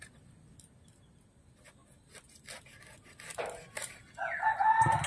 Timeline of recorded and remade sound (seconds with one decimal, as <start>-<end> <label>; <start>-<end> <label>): 0.0-5.1 recorded